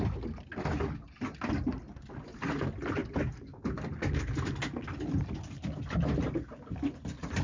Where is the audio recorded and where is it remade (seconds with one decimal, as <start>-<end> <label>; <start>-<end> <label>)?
0.0-7.4 recorded